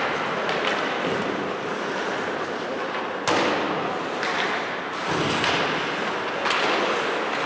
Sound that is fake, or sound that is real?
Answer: real